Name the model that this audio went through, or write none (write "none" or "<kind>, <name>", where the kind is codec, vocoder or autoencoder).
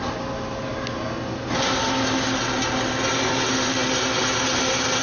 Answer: none